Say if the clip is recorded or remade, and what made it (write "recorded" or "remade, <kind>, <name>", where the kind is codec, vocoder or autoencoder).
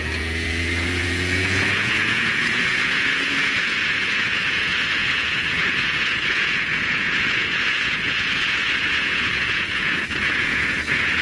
remade, vocoder, Vocos